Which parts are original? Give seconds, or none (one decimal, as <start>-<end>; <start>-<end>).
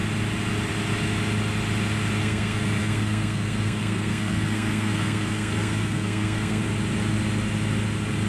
0.0-2.2; 6.6-8.3